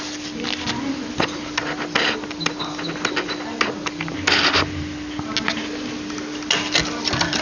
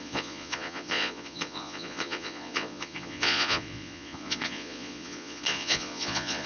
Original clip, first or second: first